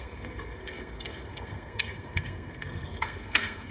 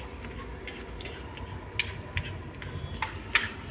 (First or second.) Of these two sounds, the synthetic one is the first